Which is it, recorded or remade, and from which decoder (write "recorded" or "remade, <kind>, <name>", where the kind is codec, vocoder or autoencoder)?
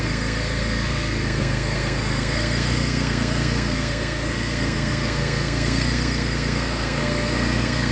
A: remade, codec, SNAC